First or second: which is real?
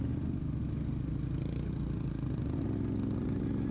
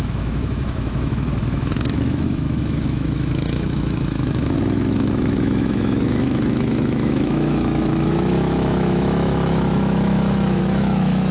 first